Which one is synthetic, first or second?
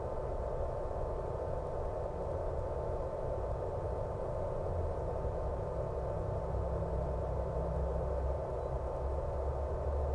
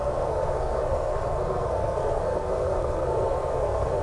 second